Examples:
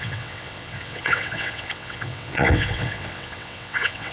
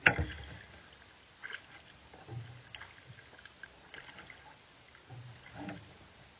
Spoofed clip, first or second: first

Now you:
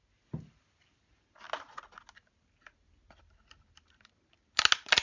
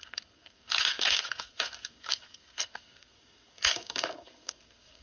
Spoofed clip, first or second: second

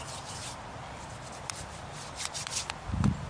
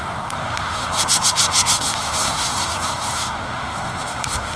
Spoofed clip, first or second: second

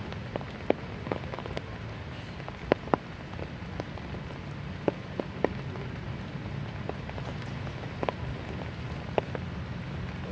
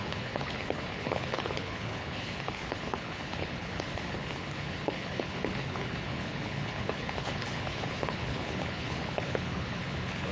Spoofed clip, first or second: second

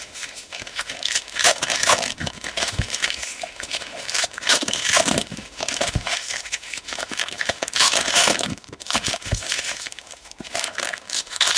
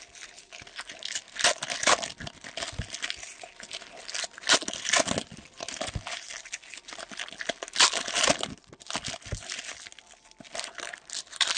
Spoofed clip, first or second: first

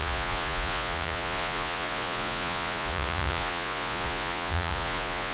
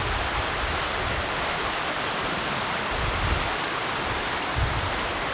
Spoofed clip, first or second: first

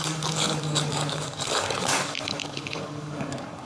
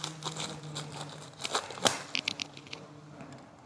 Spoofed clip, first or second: first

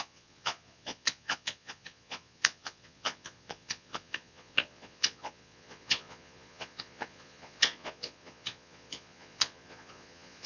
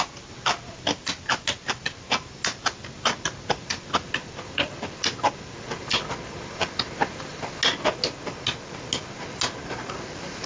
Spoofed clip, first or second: first